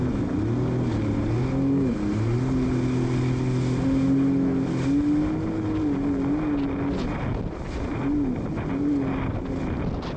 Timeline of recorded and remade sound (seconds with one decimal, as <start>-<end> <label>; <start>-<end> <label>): 0.0-10.2 recorded